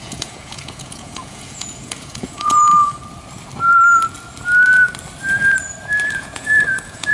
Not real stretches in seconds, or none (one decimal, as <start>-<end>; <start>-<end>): 0.0-2.7; 6.1-7.1